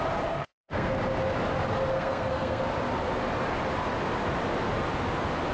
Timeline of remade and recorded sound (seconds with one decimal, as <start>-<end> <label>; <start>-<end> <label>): 0.0-0.4 recorded; 0.4-0.9 remade; 0.9-1.9 recorded; 1.9-2.6 remade; 2.6-5.5 recorded